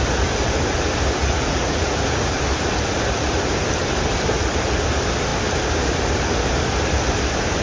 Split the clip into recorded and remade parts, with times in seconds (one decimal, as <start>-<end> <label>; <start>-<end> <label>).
0.0-1.3 recorded; 1.3-2.4 remade; 2.4-7.6 recorded